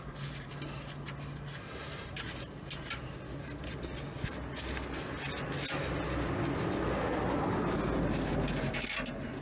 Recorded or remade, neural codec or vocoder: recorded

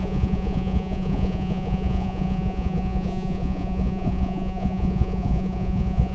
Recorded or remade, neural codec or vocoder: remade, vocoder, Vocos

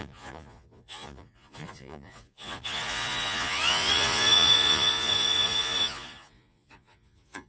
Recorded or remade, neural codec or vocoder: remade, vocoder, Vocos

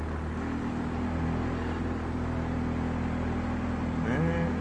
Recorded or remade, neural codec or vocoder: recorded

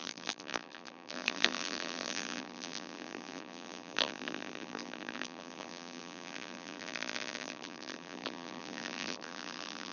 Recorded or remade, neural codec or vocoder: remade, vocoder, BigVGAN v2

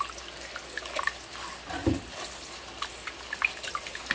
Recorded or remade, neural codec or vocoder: recorded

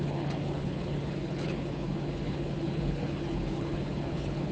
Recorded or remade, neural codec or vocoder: remade, codec, HILCodec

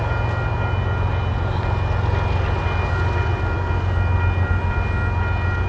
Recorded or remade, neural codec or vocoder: recorded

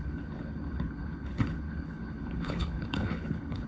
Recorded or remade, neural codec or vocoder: remade, codec, HILCodec